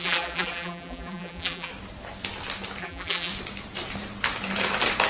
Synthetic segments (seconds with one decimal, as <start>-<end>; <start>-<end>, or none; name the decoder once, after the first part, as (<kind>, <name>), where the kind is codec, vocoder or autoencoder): 0.0-1.7 (vocoder, BigVGAN v2); 2.8-3.3